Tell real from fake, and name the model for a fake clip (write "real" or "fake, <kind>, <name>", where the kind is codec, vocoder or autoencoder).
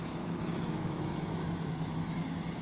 fake, autoencoder, DAC-VAE